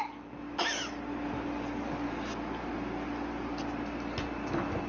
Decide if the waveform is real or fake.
real